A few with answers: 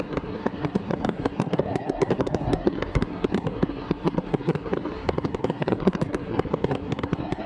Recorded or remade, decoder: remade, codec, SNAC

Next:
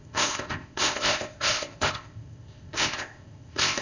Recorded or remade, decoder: remade, codec, ZipCodec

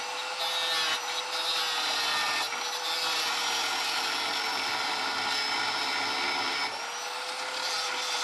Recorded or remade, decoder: recorded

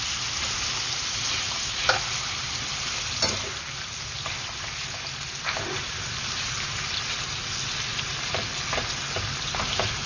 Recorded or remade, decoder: recorded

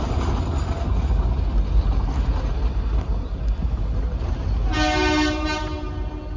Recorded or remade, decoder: recorded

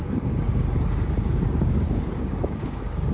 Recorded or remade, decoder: remade, codec, DAC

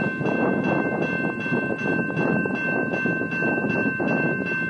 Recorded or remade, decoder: recorded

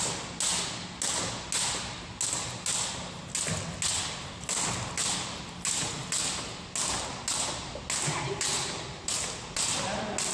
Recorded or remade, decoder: recorded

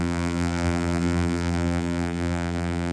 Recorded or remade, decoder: remade, vocoder, BigVGAN v2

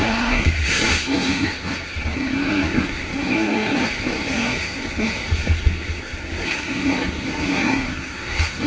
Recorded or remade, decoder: remade, codec, SNAC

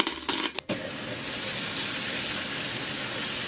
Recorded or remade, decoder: recorded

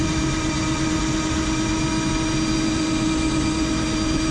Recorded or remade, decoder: recorded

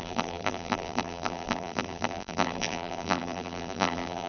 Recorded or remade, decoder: remade, vocoder, BigVGAN v2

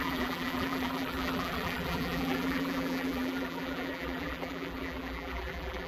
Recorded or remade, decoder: remade, vocoder, BigVGAN v2